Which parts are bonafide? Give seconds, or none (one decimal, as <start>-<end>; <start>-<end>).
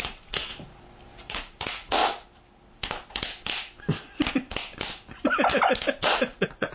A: 0.5-1.3; 2.0-6.0